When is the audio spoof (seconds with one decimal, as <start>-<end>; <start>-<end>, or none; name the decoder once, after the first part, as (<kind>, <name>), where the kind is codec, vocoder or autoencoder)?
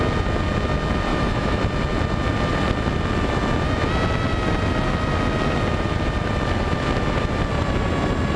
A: 1.1-1.6 (autoencoder, DAC-VAE)